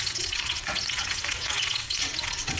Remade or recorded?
remade